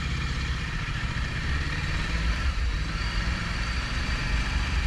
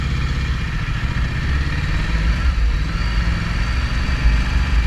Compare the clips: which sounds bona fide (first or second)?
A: second